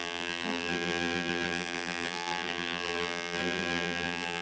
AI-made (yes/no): yes